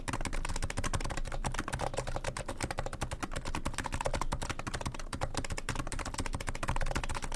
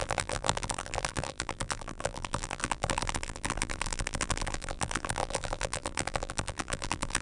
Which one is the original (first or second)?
first